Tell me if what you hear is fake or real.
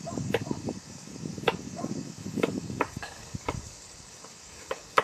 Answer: fake